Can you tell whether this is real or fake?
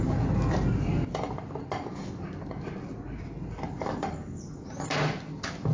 real